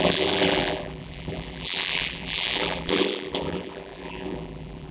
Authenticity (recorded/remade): remade